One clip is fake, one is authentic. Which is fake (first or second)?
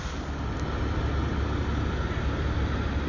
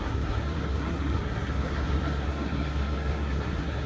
second